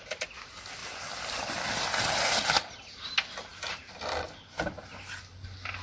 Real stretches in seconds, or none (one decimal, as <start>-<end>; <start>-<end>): 0.0-5.8